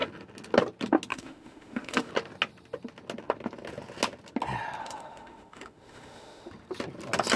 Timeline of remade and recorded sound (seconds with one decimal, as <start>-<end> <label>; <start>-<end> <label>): 0.0-1.1 recorded; 1.1-2.1 remade; 2.1-4.8 recorded; 4.8-6.5 remade; 6.5-7.4 recorded

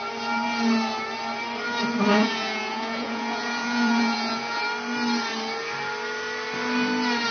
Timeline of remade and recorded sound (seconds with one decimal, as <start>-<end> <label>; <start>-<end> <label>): 0.0-2.1 recorded; 2.1-4.6 remade; 4.6-7.3 recorded

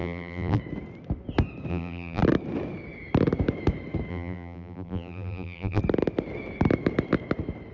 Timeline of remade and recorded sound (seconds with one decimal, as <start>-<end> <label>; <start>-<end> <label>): 0.0-0.6 remade; 0.6-1.7 recorded; 1.7-2.2 remade; 2.2-4.1 recorded; 4.1-5.8 remade; 5.8-7.7 recorded

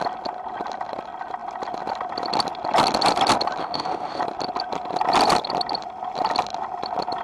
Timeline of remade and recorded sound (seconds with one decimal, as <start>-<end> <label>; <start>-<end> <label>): 0.0-3.6 recorded; 3.6-4.2 remade; 4.2-7.2 recorded

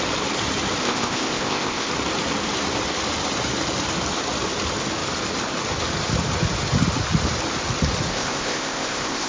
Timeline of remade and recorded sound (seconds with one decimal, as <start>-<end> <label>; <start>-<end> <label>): 0.0-0.8 recorded; 0.8-1.9 remade; 1.9-8.1 recorded; 8.1-9.3 remade

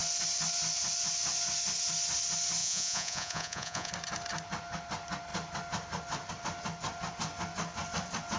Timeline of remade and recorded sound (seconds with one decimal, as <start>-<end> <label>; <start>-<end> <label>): 0.0-2.6 recorded; 2.6-3.9 remade; 3.9-8.4 recorded